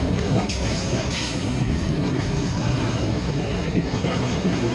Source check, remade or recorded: remade